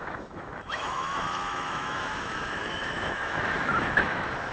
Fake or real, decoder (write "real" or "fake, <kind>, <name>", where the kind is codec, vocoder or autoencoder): fake, autoencoder, DAC-VAE